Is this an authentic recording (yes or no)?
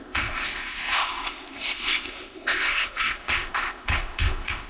no